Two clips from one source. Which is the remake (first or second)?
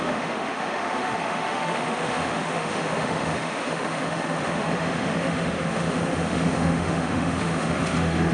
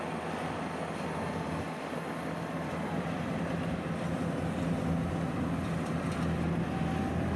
first